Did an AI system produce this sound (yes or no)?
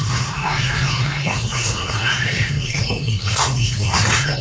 yes